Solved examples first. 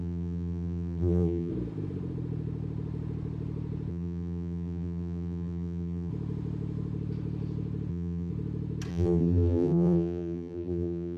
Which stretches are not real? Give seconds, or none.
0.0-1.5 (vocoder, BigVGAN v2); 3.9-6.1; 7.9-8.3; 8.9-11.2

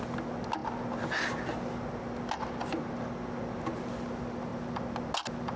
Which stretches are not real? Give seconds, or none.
none

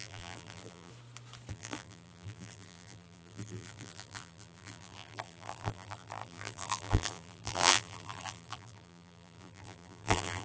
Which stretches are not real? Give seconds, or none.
0.0-0.9 (vocoder, BigVGAN v2); 1.5-10.4

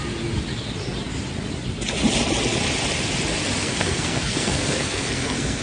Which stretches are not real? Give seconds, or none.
3.6-5.6 (codec, SNAC)

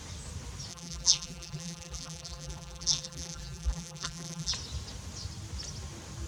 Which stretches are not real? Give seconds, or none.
0.7-4.5 (vocoder, BigVGAN v2)